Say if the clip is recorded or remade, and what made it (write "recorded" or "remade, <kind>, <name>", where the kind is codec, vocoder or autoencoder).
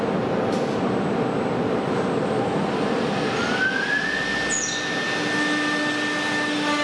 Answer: recorded